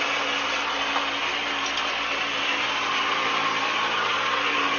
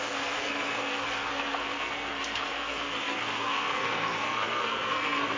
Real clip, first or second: first